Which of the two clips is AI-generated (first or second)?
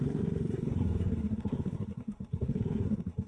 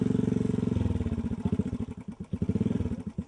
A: first